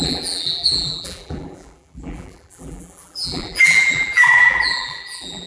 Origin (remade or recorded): remade